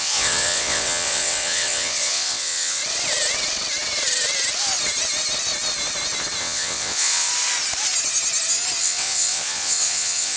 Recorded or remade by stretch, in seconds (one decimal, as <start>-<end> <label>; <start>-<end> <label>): 0.0-2.8 remade; 2.8-6.4 recorded; 6.4-7.3 remade; 7.3-8.8 recorded; 8.8-10.4 remade